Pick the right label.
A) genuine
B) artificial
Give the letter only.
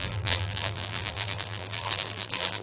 B